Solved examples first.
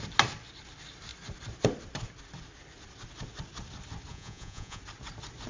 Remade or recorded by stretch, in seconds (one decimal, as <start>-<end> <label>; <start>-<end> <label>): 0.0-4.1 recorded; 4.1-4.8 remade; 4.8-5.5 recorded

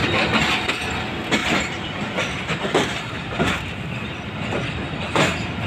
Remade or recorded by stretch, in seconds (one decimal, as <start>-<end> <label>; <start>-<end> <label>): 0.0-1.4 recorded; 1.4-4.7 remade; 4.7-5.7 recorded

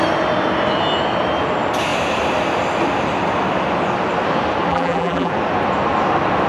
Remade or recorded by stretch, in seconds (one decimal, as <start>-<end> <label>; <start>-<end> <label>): 0.0-4.7 recorded; 4.7-5.3 remade; 5.3-6.5 recorded

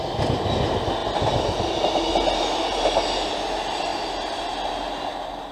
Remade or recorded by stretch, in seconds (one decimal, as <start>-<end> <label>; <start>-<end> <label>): 0.0-5.5 recorded

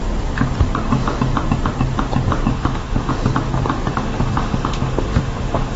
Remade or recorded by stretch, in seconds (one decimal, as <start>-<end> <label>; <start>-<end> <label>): 0.0-2.5 recorded; 2.5-3.1 remade; 3.1-3.9 recorded; 3.9-5.8 remade

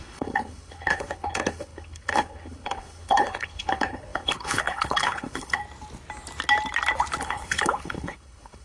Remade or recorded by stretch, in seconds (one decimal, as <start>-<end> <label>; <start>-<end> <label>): 0.0-5.6 remade; 5.6-7.2 recorded; 7.2-8.6 remade

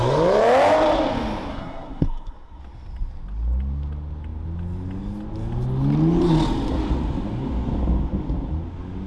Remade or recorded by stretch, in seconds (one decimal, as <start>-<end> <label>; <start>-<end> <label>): 0.0-1.5 recorded; 1.5-2.6 remade; 2.6-9.1 recorded

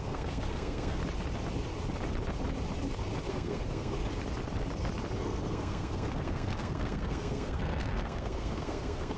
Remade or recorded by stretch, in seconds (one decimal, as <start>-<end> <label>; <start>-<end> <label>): 0.0-1.0 remade; 1.0-3.3 recorded; 3.3-4.0 remade; 4.0-5.2 recorded; 5.2-9.2 remade